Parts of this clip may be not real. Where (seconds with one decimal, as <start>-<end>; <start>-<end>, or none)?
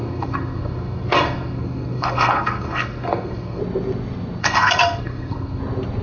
0.0-3.6; 4.4-5.6